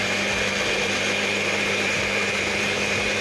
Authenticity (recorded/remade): recorded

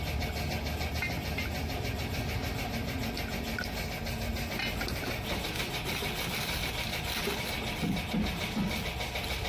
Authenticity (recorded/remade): recorded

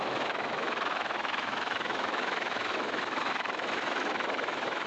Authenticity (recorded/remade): remade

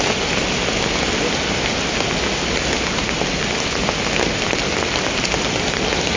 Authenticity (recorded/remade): recorded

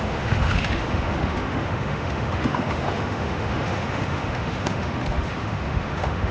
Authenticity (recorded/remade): remade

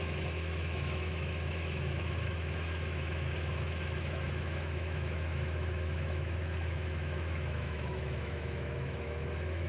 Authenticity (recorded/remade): remade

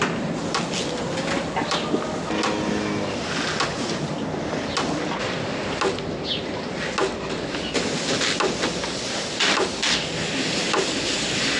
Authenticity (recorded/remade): recorded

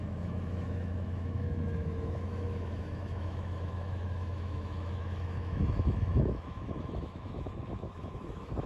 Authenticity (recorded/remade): remade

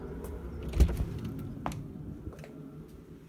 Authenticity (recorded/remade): recorded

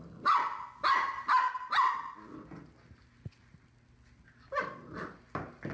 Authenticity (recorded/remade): recorded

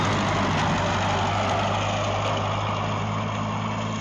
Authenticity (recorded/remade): recorded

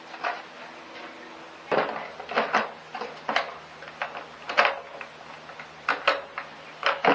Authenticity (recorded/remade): recorded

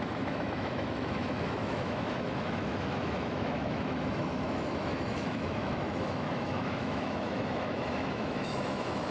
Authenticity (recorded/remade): remade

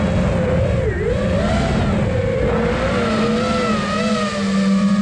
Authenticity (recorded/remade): recorded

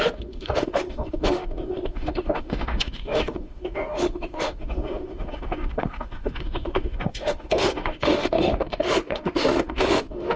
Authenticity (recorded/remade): remade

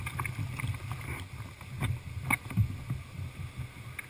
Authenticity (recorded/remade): recorded